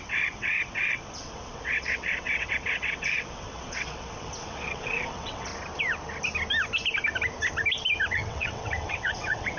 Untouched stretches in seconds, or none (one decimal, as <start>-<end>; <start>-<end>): 5.5-8.1